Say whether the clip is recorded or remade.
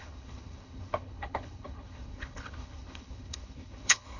remade